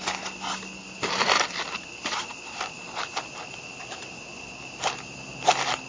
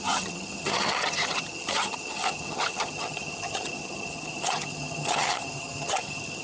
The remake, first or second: second